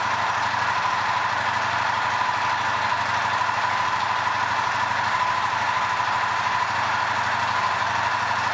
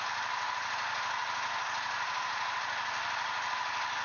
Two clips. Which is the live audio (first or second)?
second